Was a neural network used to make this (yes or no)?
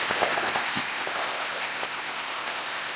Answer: yes